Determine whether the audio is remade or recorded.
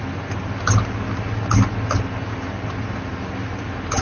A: recorded